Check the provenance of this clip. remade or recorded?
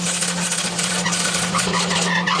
recorded